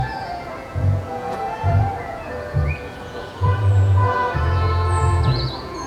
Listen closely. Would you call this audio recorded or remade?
remade